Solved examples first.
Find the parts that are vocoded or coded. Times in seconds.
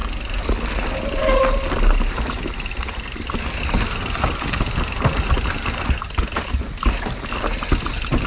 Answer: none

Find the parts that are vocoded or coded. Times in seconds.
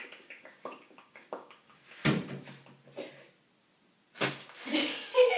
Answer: 0.0-1.8; 4.3-5.4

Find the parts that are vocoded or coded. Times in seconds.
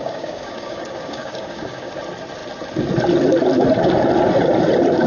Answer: 0.0-1.9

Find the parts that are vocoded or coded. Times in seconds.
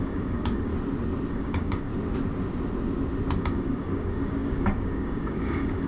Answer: 0.0-0.7; 1.3-1.9; 3.4-5.9